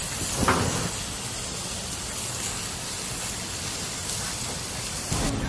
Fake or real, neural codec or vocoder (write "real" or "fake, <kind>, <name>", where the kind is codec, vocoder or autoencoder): real